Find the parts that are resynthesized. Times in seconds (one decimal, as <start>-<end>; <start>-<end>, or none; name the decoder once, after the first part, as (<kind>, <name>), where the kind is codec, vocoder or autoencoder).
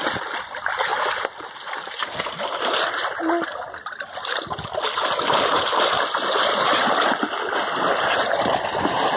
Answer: none